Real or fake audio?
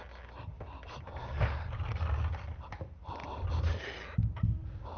real